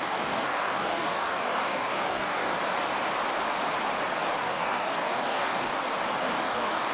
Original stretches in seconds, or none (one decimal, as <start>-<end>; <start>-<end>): 2.5-4.4; 5.7-6.2